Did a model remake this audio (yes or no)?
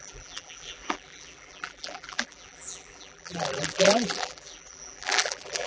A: yes